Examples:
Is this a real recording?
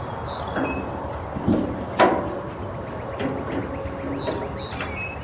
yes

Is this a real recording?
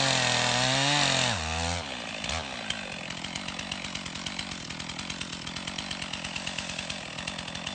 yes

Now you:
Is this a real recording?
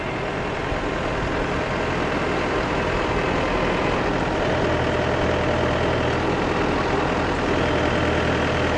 yes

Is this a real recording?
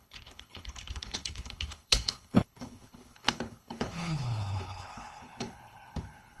no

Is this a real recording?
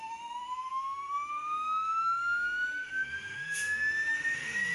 no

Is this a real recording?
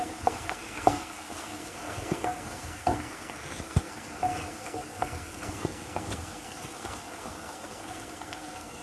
no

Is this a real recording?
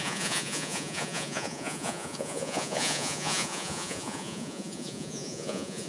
no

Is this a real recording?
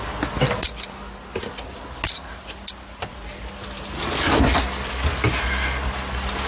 yes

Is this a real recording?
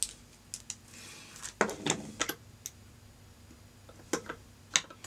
yes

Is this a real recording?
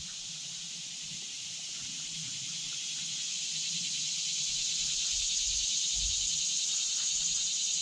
yes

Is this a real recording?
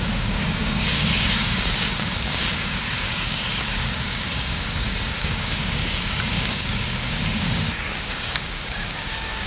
no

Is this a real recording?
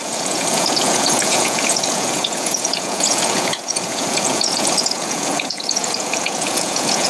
no